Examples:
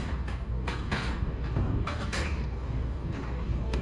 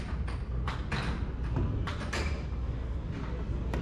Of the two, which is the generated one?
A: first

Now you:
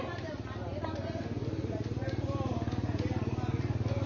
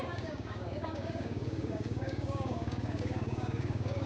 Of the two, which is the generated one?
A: second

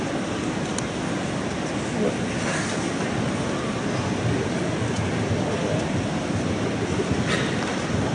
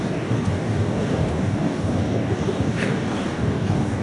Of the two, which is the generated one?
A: second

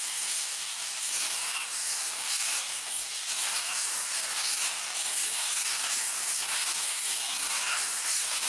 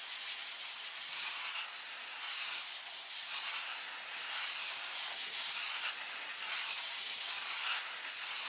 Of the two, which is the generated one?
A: first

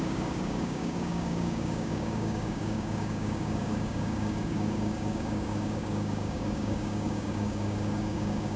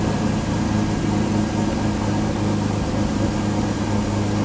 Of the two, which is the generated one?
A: first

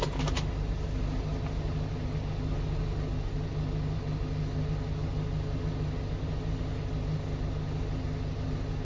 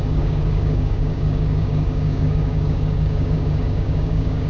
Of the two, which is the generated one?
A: second